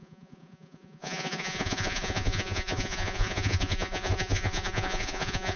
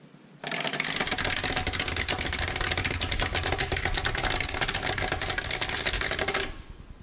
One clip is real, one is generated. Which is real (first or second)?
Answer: second